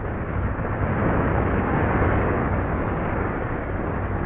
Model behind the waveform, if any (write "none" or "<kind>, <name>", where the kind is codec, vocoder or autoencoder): codec, DAC